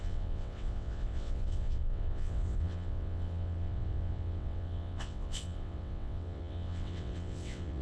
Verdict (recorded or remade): remade